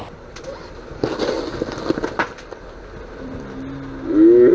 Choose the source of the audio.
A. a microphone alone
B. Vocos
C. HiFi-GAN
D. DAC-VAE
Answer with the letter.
A